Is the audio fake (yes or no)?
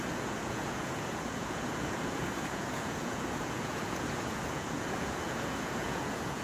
yes